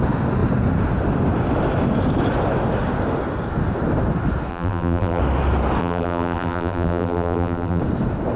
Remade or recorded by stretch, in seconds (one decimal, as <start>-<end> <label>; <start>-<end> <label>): 0.0-4.5 recorded; 4.5-5.2 remade; 5.2-5.8 recorded; 5.8-7.8 remade; 7.8-8.4 recorded